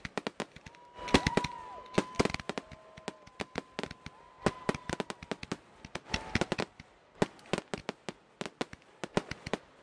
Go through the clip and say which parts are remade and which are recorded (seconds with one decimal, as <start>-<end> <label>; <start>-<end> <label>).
0.0-9.8 recorded